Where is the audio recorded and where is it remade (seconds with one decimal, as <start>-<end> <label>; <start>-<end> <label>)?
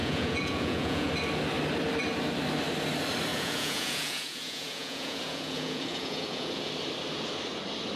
0.0-1.1 remade; 1.1-3.3 recorded; 3.3-6.7 remade; 6.7-8.0 recorded